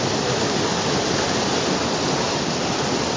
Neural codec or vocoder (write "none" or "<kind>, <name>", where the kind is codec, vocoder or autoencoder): none